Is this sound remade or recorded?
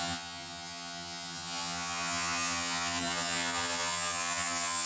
remade